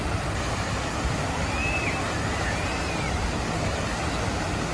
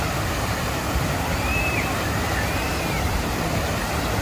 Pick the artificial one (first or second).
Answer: second